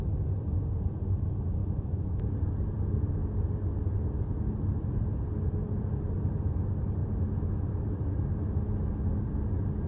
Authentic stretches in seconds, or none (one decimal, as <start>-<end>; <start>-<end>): 0.0-1.6; 2.3-9.9